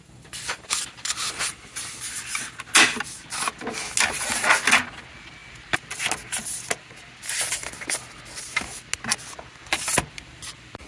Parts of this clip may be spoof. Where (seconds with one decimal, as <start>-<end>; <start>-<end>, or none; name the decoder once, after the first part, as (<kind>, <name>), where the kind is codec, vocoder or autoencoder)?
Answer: none